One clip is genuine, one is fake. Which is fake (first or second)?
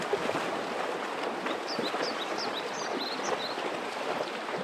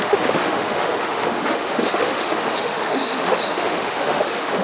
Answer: second